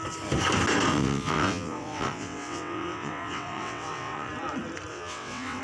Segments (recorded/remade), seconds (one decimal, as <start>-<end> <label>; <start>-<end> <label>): 0.0-0.9 recorded; 0.9-4.3 remade; 4.3-4.9 recorded; 4.9-5.6 remade